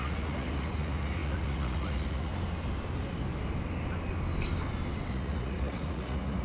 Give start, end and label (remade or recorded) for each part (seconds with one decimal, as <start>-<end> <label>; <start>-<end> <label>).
0.0-2.3 remade; 2.3-5.1 recorded; 5.1-6.4 remade